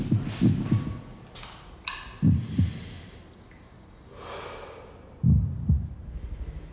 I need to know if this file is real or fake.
real